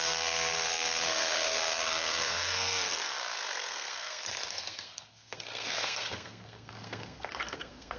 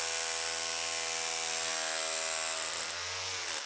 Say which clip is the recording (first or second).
second